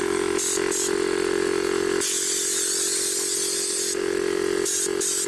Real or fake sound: real